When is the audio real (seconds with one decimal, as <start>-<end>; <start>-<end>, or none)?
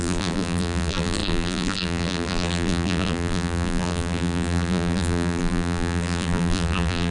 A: none